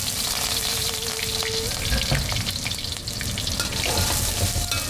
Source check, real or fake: real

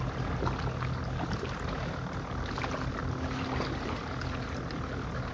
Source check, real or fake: real